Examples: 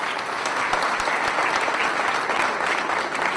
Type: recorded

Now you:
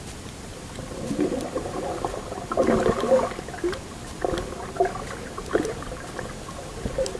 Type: recorded